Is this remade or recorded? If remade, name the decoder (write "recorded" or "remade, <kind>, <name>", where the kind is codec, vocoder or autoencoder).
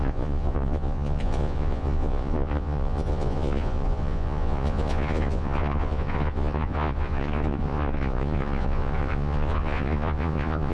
remade, vocoder, Vocos